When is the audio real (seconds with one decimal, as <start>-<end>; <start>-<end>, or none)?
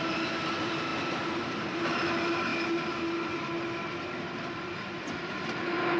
0.0-6.0